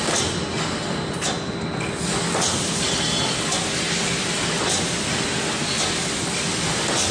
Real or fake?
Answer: real